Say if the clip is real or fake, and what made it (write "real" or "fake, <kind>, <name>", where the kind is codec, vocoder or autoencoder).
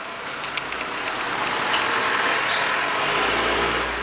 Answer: real